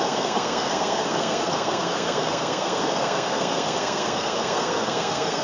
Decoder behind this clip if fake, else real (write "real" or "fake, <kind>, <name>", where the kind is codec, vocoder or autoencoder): fake, codec, SNAC